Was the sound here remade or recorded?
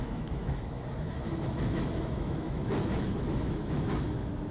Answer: remade